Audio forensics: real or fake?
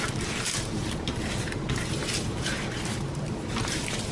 fake